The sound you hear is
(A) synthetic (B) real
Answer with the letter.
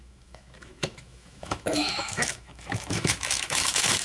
A